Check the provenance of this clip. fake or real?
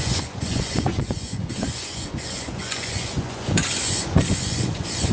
fake